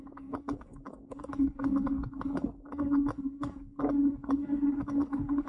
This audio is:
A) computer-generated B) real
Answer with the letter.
A